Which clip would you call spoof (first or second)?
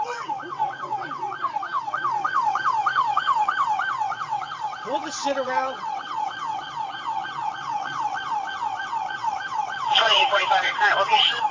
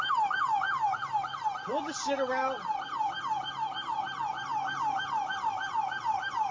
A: first